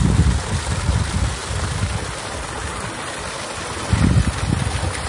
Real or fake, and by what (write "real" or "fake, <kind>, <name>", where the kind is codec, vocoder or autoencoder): real